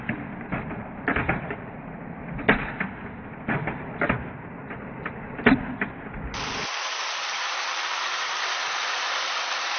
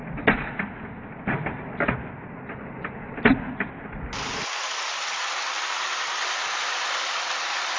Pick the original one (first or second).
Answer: second